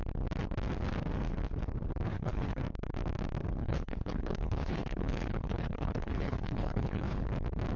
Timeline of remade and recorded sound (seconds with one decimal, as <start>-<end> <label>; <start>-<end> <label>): 0.0-2.1 recorded; 2.1-2.6 remade; 2.6-3.6 recorded; 3.6-7.3 remade; 7.3-7.8 recorded